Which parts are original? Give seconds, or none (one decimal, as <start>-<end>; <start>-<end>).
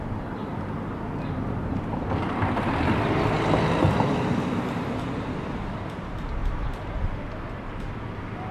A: 0.0-8.5